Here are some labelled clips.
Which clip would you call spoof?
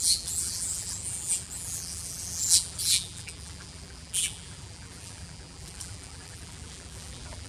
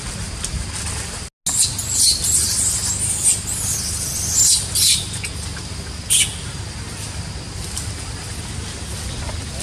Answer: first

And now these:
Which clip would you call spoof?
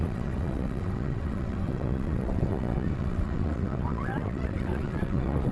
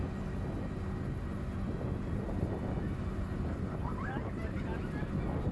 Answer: first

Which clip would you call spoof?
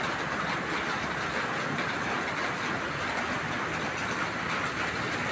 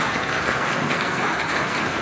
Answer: second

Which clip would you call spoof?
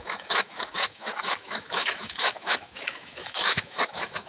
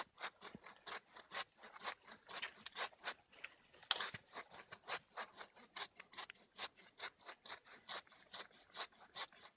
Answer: first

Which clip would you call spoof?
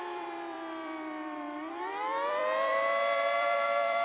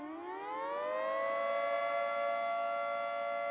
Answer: first